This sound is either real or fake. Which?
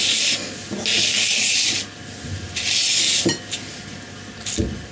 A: real